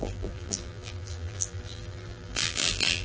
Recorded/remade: remade